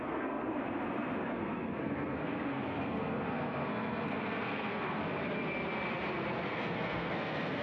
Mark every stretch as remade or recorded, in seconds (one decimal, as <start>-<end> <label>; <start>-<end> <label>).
0.0-0.5 remade; 0.5-1.3 recorded; 1.3-5.0 remade; 5.0-6.5 recorded; 6.5-7.6 remade